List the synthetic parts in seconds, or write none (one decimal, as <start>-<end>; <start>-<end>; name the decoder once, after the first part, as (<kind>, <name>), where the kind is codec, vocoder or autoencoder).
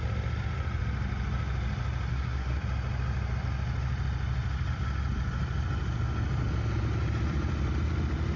2.1-2.6 (codec, SNAC)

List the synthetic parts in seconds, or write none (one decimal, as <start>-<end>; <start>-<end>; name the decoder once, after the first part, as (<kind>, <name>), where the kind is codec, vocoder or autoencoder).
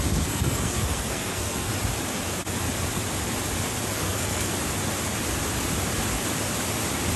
0.0-1.7 (codec, SNAC); 3.9-4.5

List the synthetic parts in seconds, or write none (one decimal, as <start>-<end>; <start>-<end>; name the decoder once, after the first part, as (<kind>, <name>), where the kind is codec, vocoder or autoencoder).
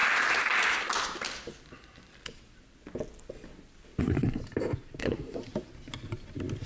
4.0-4.4 (codec, SNAC); 5.0-5.4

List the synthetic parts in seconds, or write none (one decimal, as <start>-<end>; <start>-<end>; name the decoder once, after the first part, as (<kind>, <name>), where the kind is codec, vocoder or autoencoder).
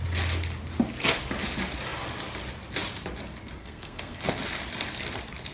3.6-4.3 (codec, SNAC)